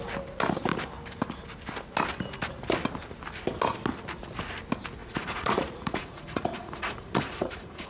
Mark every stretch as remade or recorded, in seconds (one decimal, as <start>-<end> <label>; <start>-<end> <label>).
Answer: 0.0-5.0 recorded; 5.0-7.9 remade